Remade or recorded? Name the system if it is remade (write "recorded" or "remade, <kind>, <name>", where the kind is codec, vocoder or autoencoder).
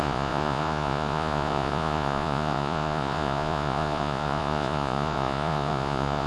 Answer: remade, vocoder, Vocos